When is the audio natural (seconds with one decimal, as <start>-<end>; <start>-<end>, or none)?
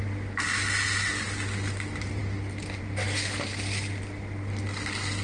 0.0-5.2